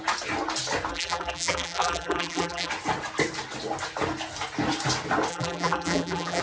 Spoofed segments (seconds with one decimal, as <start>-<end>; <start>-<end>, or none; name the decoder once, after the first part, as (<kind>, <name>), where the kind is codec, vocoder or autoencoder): 0.9-2.7 (vocoder, BigVGAN v2); 5.3-6.4